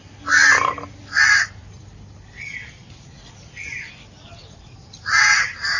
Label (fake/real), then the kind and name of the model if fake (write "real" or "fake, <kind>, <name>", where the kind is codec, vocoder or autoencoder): real